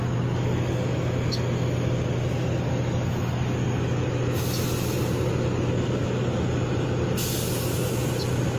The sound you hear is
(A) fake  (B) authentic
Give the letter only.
B